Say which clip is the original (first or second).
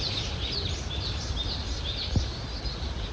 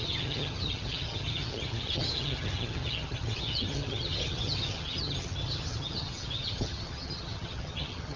first